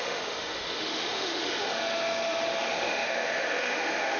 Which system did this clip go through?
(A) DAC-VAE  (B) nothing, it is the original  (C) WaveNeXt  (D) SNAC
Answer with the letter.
A